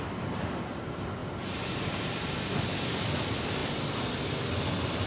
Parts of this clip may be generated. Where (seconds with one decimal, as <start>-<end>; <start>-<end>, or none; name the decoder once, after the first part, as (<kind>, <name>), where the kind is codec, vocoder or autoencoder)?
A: none